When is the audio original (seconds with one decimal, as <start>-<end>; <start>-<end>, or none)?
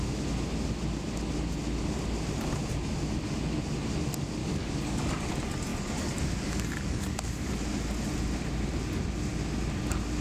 0.0-4.4; 5.3-5.7; 7.5-10.2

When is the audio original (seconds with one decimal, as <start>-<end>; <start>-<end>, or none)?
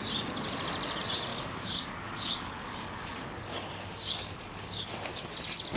0.0-1.3; 4.8-5.8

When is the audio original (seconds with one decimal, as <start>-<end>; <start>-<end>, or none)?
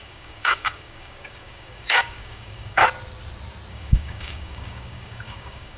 2.8-3.7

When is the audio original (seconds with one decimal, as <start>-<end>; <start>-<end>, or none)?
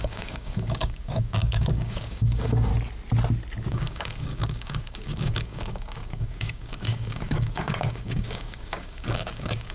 2.7-3.7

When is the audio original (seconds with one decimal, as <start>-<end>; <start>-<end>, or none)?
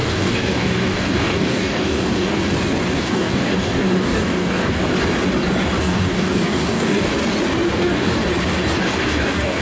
2.4-3.0; 4.9-5.8; 7.1-7.7; 8.2-8.8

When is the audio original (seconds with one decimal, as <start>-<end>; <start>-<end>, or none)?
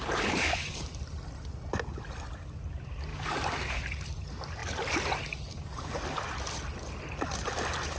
0.9-3.1; 3.8-5.5; 6.0-8.0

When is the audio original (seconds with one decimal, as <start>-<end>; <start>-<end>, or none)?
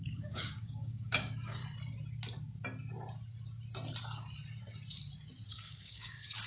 1.6-5.5